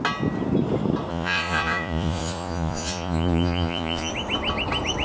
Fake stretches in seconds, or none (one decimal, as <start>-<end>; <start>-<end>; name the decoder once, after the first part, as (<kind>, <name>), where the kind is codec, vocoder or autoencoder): 1.1-4.1 (vocoder, Vocos)

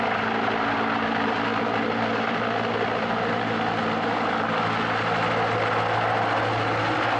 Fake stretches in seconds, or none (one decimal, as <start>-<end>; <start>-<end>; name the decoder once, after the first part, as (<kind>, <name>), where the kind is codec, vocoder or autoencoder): none

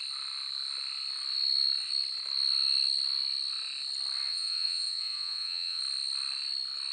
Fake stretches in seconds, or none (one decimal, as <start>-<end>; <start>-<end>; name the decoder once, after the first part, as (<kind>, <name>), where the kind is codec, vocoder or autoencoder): 4.3-5.8 (vocoder, Vocos)